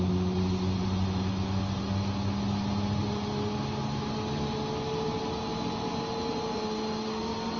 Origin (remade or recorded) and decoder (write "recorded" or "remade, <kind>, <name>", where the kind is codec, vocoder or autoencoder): recorded